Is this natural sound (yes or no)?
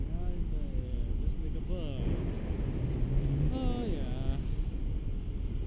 yes